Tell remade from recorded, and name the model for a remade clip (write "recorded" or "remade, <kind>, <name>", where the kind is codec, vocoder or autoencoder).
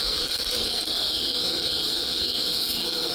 remade, codec, SNAC